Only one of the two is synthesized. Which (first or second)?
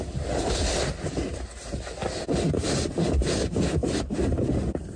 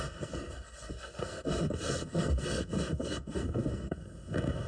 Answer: second